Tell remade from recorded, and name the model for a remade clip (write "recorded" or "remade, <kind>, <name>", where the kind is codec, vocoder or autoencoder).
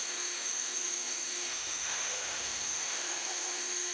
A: remade, autoencoder, DAC-VAE